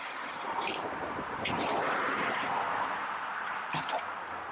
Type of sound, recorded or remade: remade